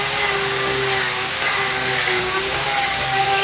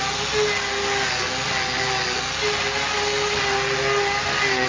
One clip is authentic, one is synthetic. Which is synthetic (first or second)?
first